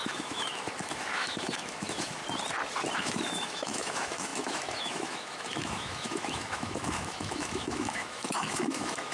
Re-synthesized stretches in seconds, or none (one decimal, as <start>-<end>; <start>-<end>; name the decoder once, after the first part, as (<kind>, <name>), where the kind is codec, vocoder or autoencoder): 0.0-2.2 (autoencoder, DAC-VAE); 3.0-9.1